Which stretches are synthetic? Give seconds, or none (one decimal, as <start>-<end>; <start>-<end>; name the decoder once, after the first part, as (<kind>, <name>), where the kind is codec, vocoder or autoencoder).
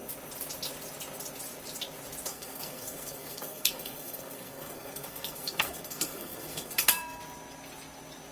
2.3-7.2 (codec, SNAC)